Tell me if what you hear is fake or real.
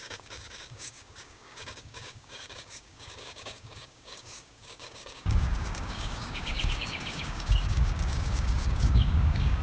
fake